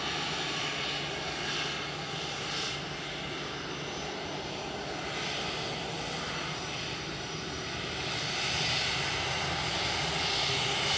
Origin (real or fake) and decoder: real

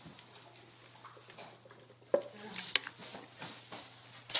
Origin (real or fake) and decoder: real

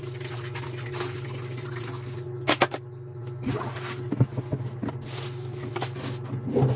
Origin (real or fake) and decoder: real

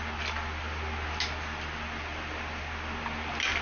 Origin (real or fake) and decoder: real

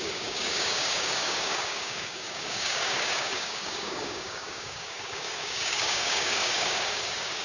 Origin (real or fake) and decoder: fake, codec, DAC